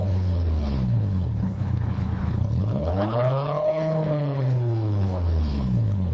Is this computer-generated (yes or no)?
yes